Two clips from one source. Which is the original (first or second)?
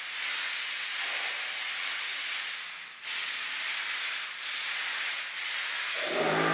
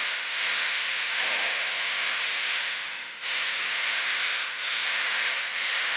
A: first